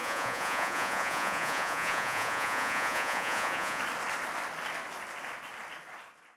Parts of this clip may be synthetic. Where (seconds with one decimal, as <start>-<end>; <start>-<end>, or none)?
0.0-3.8